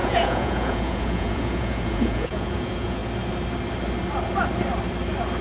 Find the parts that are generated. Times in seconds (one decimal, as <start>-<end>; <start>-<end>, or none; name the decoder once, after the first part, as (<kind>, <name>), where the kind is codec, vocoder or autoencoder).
0.0-3.0 (vocoder, Vocos)